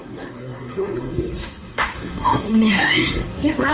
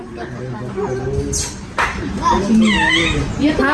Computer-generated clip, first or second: first